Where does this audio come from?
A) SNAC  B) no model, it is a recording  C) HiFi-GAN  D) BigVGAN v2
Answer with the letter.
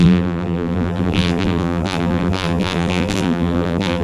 D